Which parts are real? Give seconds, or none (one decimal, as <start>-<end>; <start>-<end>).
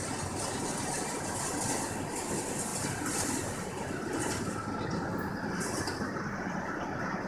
0.0-7.3